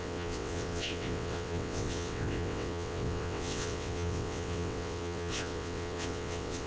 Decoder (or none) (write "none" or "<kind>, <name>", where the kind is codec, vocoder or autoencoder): vocoder, WaveNeXt